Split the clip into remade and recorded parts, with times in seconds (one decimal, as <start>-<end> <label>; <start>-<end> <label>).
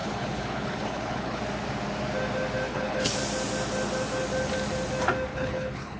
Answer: 0.0-1.4 remade; 1.4-2.7 recorded; 2.7-3.2 remade; 3.2-5.3 recorded; 5.3-6.0 remade